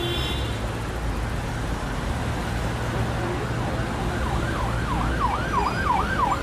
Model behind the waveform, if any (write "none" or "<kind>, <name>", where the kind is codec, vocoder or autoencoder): none